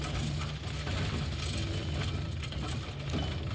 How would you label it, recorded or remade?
recorded